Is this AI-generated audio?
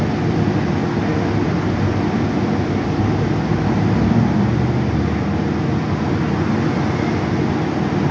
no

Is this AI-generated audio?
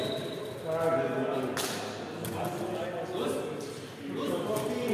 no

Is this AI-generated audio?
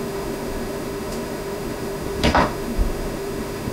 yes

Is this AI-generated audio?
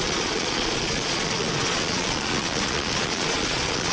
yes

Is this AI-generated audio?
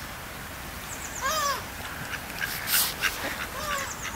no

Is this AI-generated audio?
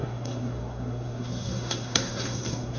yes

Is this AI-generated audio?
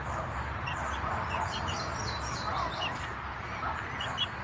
no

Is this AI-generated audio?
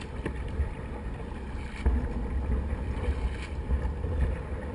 no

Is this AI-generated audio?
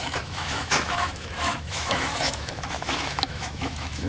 yes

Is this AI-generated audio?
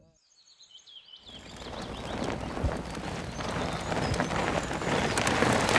no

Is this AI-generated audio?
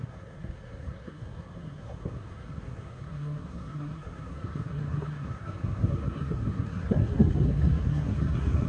yes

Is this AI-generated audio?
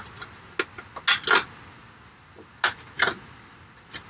no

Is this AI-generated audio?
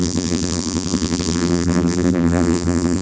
yes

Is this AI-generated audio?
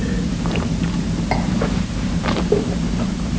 yes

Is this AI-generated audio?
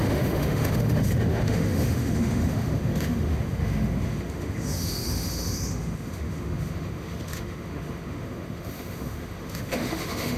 yes